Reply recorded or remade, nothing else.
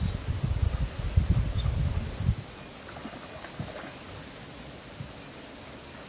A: recorded